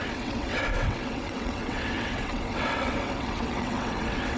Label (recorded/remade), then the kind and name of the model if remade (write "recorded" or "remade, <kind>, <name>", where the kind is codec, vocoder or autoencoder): remade, vocoder, WaveNeXt